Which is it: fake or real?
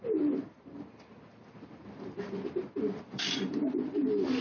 fake